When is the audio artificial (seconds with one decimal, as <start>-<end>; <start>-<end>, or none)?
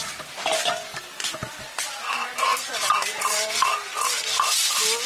0.9-1.8